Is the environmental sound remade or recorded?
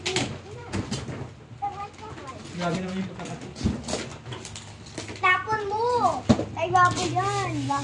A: recorded